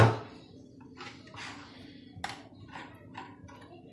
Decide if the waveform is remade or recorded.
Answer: recorded